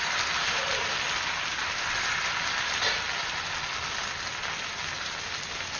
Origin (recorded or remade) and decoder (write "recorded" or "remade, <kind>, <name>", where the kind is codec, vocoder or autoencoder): recorded